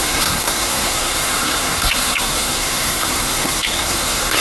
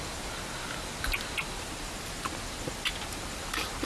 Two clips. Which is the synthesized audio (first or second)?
first